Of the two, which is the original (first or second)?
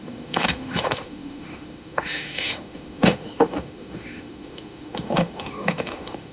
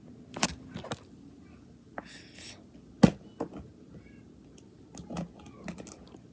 second